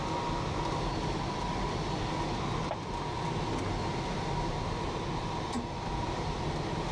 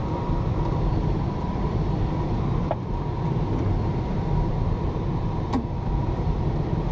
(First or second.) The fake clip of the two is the second